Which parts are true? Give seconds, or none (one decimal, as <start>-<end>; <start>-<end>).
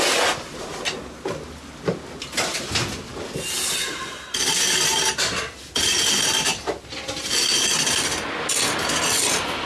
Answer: 0.0-9.7